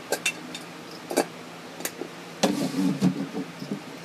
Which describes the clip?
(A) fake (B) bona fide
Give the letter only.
B